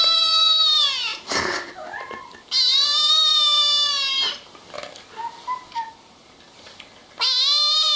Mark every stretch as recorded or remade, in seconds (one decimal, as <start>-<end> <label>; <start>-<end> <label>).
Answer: 0.0-1.1 recorded; 1.1-1.7 remade; 1.7-2.7 recorded; 2.7-3.3 remade; 3.3-8.0 recorded